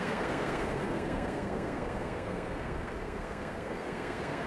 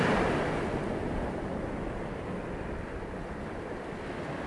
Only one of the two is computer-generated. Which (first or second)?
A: first